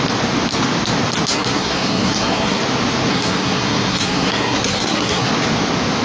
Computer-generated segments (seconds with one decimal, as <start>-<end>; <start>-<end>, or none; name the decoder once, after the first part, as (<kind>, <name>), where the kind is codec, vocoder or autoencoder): 1.3-2.6 (codec, SNAC); 3.1-5.3